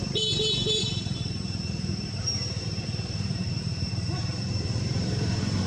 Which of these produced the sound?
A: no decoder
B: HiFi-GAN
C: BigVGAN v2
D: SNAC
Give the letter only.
C